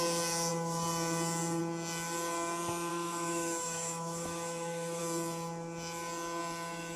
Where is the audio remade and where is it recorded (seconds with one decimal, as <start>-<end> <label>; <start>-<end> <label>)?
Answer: 0.0-2.9 recorded; 2.9-5.0 remade; 5.0-7.0 recorded